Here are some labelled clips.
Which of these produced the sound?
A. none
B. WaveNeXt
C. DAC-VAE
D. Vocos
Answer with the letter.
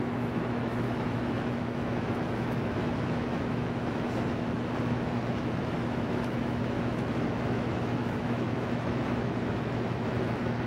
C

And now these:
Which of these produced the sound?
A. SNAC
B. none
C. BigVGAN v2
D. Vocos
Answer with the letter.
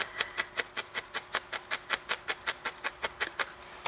B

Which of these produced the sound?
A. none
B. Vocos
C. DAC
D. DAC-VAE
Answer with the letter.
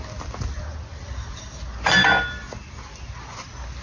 A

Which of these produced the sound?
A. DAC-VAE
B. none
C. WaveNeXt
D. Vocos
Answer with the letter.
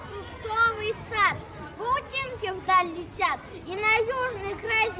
B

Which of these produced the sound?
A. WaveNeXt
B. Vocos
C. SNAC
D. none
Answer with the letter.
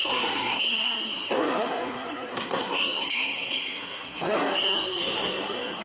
C